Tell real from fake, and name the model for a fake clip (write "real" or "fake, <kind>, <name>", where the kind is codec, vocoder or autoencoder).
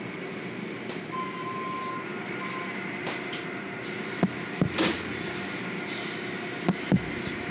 real